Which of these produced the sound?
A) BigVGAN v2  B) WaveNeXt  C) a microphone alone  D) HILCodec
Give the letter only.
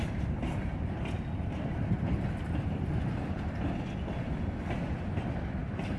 C